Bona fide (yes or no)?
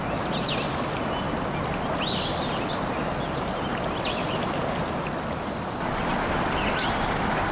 yes